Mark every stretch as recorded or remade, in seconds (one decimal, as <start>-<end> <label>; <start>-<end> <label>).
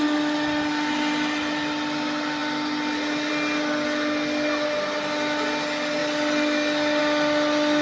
0.0-7.8 recorded